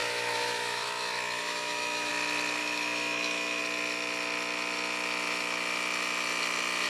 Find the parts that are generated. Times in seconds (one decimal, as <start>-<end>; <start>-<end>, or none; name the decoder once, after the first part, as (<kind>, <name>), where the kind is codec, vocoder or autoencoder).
0.0-2.1 (autoencoder, DAC-VAE); 2.6-3.6